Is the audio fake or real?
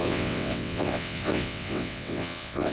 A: fake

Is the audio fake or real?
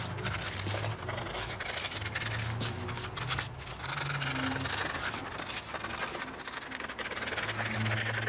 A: real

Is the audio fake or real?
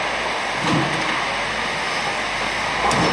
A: real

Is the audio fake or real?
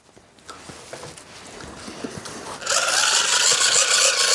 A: real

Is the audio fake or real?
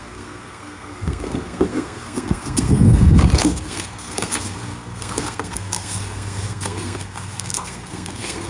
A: fake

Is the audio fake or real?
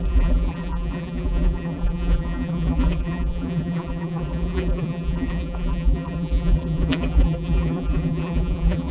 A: fake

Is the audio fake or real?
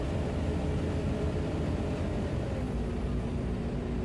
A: fake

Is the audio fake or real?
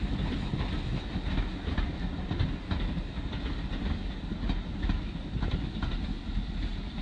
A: real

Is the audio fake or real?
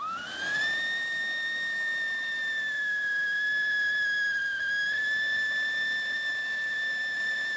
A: real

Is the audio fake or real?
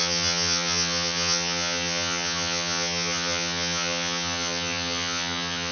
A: fake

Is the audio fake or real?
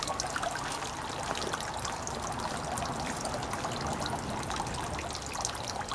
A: real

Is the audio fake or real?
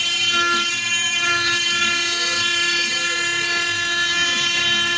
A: fake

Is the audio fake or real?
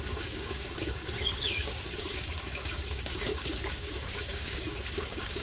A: fake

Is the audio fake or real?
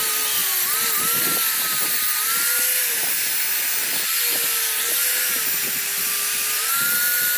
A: real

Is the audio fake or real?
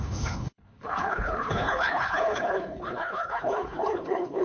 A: fake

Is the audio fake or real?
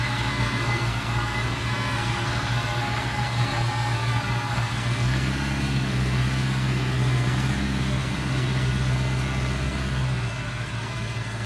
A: fake